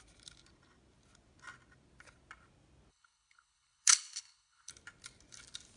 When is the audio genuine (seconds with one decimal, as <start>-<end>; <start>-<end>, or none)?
0.0-2.9; 4.7-5.8